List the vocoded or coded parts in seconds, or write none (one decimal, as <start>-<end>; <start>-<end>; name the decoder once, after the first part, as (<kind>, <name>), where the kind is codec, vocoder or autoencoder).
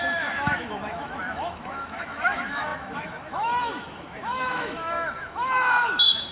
0.0-6.3 (autoencoder, DAC-VAE)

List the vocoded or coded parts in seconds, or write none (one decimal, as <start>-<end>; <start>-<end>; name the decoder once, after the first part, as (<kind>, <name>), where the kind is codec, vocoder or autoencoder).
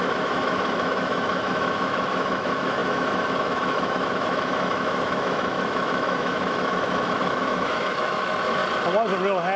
0.0-8.6 (autoencoder, DAC-VAE)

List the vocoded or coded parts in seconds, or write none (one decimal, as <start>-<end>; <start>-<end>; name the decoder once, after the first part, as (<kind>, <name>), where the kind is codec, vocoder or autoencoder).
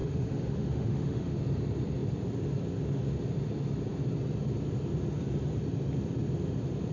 0.0-1.4 (autoencoder, DAC-VAE)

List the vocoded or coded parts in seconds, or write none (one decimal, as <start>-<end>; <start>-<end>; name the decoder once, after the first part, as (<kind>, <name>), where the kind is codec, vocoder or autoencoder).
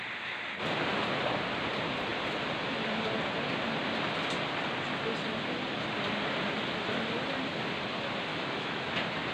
8.3-8.9 (autoencoder, DAC-VAE)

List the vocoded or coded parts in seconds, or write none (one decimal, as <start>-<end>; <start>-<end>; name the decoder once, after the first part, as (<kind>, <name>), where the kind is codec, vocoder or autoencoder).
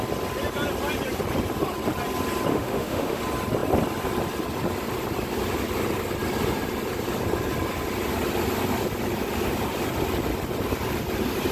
2.5-3.2 (autoencoder, DAC-VAE)